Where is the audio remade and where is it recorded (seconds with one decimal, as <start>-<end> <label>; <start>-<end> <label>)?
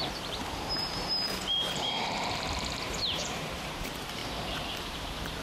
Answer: 0.0-0.4 remade; 0.4-1.4 recorded; 1.4-4.2 remade; 4.2-4.9 recorded; 4.9-5.4 remade